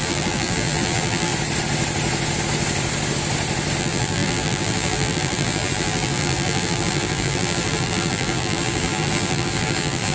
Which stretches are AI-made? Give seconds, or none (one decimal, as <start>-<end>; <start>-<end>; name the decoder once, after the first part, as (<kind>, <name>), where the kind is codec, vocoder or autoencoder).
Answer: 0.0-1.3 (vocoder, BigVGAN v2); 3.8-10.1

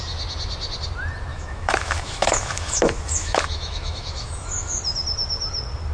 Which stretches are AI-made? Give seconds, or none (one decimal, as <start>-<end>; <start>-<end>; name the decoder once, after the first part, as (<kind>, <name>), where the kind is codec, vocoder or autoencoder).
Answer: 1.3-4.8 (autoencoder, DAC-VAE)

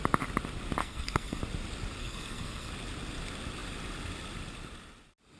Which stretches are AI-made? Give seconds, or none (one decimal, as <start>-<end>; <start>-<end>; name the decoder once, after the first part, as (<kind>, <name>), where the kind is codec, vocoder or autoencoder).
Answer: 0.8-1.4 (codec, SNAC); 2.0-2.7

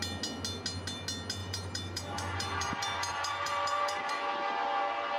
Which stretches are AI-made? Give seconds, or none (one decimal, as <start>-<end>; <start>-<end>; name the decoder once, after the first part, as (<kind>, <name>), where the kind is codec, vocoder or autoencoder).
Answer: 1.4-4.1 (vocoder, BigVGAN v2)

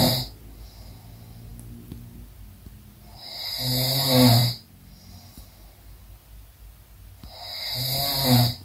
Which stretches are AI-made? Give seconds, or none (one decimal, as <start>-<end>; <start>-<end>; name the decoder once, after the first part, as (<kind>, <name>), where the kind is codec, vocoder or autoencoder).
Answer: none